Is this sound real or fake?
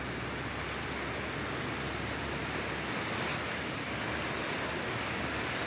real